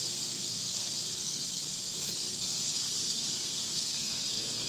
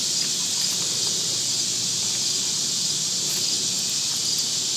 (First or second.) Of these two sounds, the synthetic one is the first